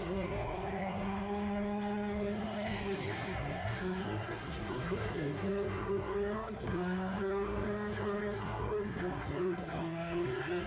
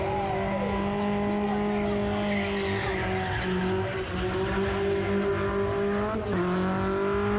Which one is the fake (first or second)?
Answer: first